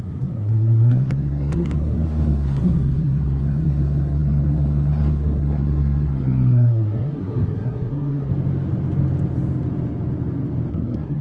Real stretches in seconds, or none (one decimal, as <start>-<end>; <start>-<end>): 8.3-10.7